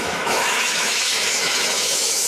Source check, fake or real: fake